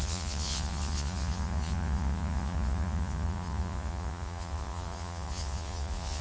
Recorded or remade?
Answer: remade